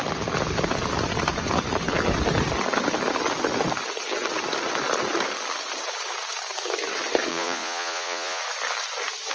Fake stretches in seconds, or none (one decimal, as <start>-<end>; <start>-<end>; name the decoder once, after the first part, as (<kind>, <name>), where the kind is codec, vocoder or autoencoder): 7.3-8.4 (vocoder, Vocos)